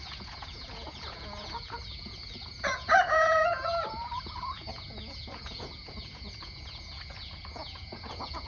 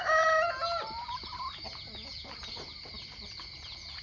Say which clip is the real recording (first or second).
second